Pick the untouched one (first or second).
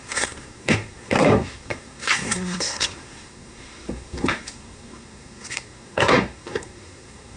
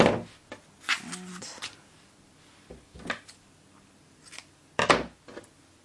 second